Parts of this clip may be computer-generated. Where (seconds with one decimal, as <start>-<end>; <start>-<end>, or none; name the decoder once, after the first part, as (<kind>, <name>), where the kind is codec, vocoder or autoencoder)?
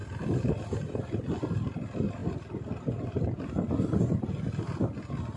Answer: none